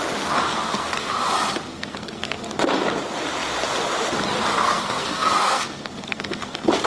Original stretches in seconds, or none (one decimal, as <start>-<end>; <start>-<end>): 0.0-0.5; 1.1-1.7; 2.4-4.5